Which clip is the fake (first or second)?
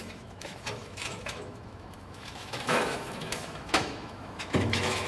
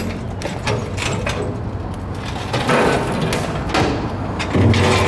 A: first